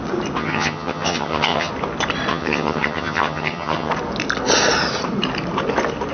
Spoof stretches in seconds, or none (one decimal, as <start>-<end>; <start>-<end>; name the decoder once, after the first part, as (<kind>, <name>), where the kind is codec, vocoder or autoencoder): 0.4-1.7 (vocoder, HiFi-GAN); 2.3-3.9